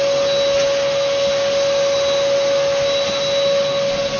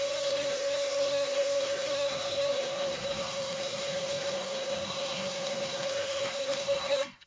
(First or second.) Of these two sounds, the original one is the first